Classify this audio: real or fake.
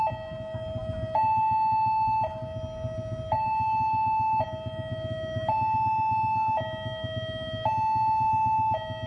real